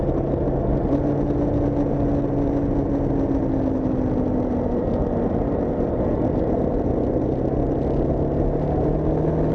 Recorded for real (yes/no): yes